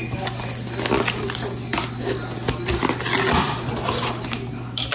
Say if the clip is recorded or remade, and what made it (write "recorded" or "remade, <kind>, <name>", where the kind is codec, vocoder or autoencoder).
recorded